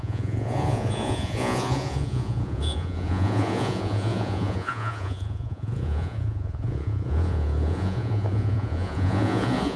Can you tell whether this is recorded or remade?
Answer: remade